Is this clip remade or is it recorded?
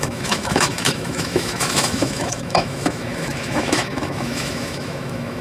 remade